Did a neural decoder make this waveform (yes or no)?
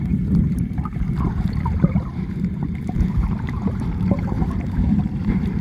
yes